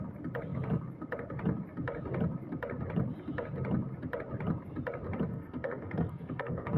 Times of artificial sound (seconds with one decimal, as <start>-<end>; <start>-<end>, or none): 5.3-6.8